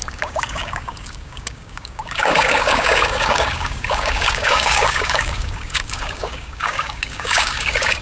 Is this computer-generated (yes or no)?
yes